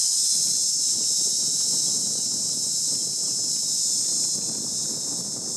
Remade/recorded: recorded